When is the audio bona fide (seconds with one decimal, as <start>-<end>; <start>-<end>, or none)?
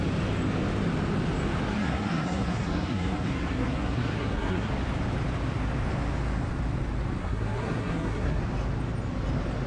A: 0.0-1.7; 4.7-7.2; 8.4-9.7